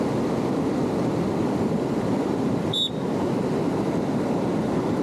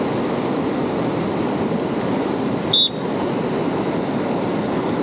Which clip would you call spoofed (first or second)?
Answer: first